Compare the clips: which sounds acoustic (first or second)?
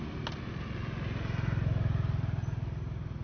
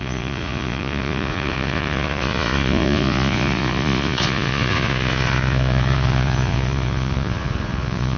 first